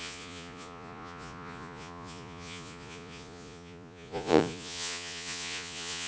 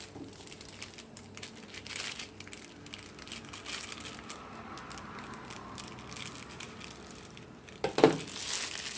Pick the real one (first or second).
second